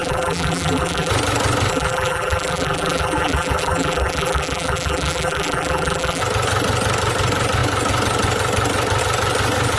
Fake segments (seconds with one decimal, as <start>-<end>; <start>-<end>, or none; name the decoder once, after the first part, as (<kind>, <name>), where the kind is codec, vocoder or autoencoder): 0.0-1.1 (vocoder, BigVGAN v2); 1.7-6.2